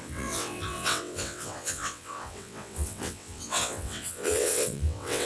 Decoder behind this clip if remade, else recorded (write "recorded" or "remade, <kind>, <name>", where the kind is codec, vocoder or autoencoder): remade, vocoder, WaveNeXt